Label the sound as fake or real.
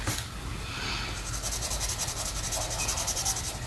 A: real